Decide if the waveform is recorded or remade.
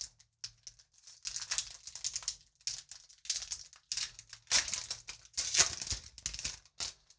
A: recorded